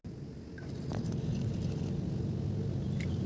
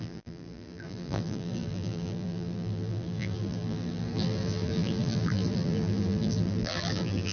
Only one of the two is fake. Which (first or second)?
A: second